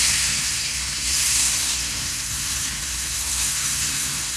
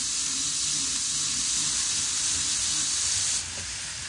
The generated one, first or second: first